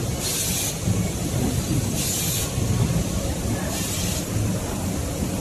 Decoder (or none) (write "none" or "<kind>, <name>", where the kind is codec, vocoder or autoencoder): none